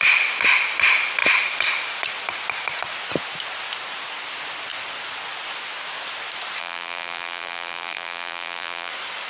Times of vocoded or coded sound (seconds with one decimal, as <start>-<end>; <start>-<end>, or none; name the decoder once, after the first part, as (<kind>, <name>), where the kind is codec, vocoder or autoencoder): 6.6-8.9 (vocoder, BigVGAN v2)